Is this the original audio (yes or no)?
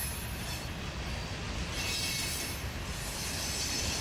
yes